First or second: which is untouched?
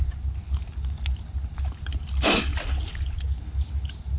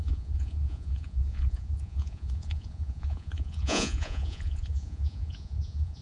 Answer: first